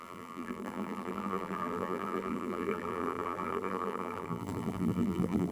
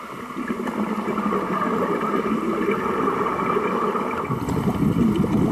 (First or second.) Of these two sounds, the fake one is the first